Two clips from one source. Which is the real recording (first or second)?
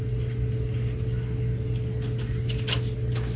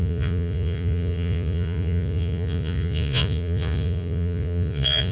first